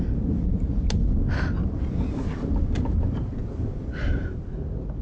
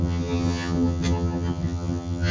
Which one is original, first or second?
first